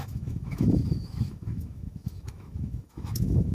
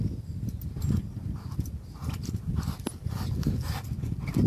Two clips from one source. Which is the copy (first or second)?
first